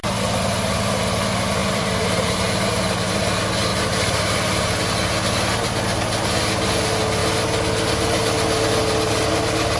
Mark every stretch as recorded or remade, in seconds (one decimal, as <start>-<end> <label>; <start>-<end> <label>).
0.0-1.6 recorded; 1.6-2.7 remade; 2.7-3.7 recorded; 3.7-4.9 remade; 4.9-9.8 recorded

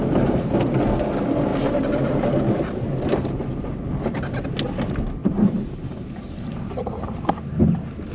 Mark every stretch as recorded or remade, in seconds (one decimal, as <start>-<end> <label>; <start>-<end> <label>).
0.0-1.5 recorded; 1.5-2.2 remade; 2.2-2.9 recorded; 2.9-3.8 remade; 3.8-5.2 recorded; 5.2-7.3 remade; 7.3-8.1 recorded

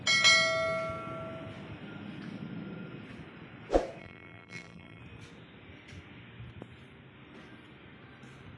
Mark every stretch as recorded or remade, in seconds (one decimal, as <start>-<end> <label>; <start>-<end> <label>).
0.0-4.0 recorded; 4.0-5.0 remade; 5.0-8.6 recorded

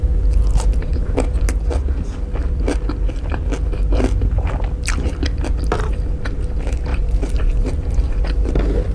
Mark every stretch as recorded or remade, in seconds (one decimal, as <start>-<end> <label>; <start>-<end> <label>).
0.0-6.9 recorded; 6.9-8.5 remade; 8.5-8.9 recorded